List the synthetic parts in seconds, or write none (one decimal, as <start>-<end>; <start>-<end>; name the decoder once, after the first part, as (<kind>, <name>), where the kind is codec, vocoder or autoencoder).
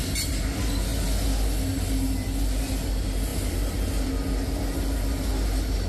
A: none